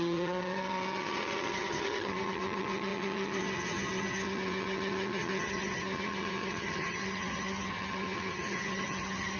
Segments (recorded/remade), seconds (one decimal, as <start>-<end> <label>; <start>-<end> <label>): 0.0-9.4 remade